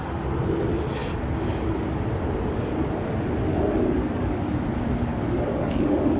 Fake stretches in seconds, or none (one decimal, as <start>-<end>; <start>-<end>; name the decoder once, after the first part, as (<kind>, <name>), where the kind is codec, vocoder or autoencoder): 3.5-4.3 (codec, DAC); 5.1-6.2